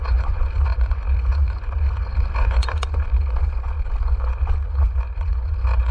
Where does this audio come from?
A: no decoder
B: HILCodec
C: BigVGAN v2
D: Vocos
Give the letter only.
D